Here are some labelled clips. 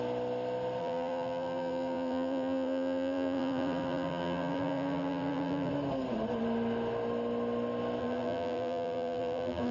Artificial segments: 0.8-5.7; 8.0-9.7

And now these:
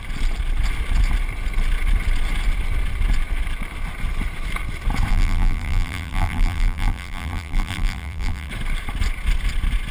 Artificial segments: 5.1-8.5

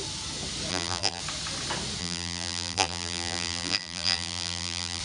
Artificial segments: 0.7-1.2; 2.0-5.0

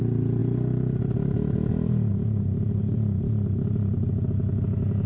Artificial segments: none

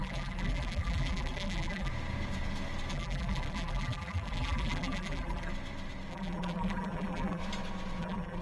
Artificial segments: 0.0-1.9; 2.9-5.5; 6.1-7.4; 8.0-8.4